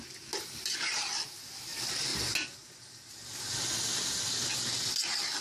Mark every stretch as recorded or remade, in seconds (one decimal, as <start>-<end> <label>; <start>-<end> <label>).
0.0-5.4 recorded